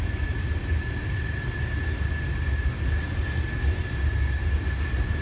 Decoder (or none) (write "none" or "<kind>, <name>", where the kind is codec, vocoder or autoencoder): none